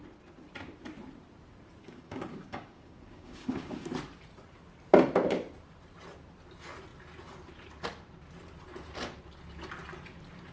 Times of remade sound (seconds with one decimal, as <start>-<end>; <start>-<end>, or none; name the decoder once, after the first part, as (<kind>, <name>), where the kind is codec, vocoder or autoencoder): 1.8-3.9 (codec, DAC)